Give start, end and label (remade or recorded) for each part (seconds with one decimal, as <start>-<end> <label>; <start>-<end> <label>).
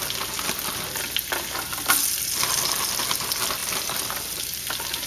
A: 0.0-5.1 recorded